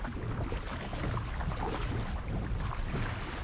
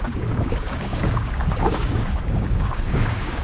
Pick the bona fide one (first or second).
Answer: first